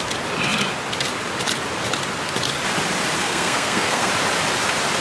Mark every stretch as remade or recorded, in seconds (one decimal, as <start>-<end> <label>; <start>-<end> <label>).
0.0-3.2 recorded; 3.2-4.1 remade; 4.1-5.0 recorded